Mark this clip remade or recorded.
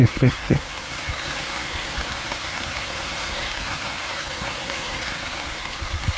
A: remade